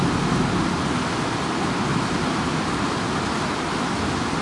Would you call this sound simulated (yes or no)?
no